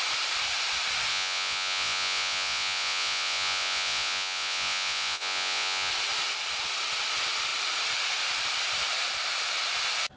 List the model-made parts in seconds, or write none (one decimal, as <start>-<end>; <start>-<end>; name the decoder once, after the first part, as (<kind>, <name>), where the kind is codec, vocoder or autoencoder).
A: 1.1-5.9 (vocoder, Vocos)